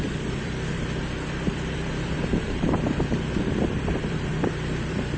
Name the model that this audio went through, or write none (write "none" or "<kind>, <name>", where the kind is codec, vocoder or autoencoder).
vocoder, BigVGAN v2